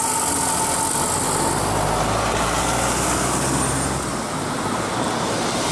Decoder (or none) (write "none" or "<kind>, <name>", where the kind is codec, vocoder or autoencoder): none